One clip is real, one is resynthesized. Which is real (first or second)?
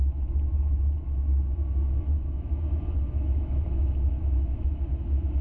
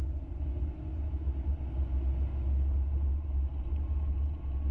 second